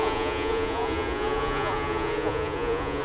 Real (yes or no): no